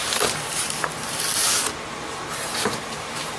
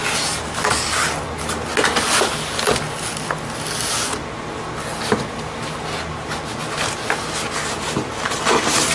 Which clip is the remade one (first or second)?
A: first